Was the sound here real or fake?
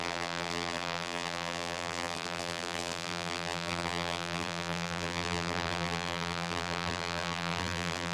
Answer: fake